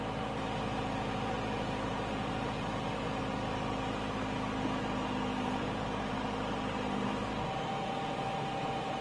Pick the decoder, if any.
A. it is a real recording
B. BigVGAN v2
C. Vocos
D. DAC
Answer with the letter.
A